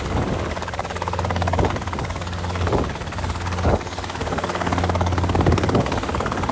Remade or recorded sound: remade